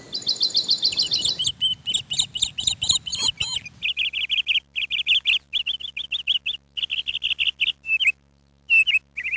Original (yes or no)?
yes